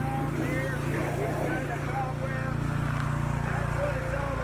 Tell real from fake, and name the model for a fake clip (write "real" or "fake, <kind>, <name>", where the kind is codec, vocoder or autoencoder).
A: real